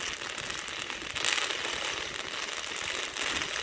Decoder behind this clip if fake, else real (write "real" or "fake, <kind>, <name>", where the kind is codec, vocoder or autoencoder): real